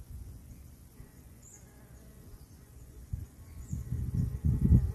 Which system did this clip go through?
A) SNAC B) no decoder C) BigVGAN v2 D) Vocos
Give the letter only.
D